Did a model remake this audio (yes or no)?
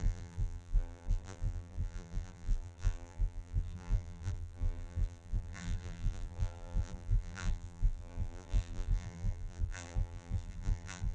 yes